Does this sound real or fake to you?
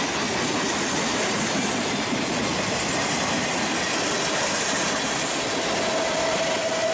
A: real